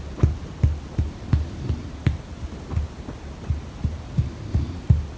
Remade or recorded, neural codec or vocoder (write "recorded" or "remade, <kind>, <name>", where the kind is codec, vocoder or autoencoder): recorded